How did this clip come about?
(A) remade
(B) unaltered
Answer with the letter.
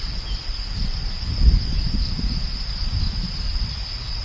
B